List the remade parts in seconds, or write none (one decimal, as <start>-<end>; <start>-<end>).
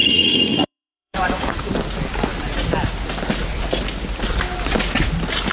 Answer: 0.0-1.7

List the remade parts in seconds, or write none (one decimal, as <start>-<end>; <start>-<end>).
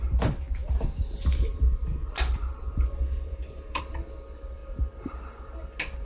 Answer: 3.3-3.8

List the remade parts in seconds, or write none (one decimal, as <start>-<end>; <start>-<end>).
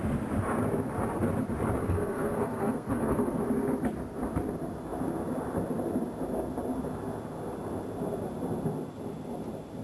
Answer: 1.8-3.4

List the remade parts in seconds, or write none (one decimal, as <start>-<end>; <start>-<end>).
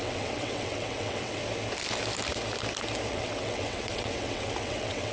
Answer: 0.0-1.4; 3.1-5.1